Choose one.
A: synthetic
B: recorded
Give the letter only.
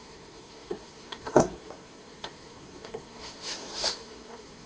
A